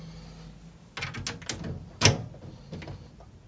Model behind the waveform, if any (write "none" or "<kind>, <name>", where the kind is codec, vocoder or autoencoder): none